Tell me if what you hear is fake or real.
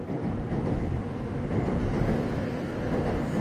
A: fake